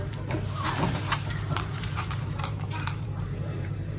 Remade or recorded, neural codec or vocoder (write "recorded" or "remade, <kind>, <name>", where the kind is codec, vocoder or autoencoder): remade, vocoder, BigVGAN v2